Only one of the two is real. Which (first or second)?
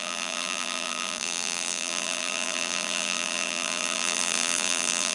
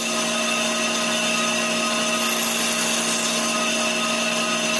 second